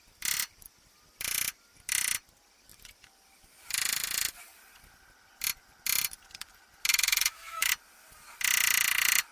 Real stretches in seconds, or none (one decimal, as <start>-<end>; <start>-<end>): 0.0-6.9; 7.7-9.3